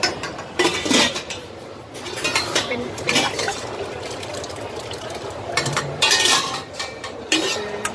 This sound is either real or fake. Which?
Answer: fake